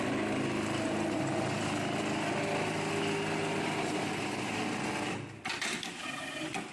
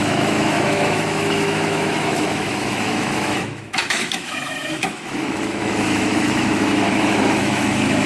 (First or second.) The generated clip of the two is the second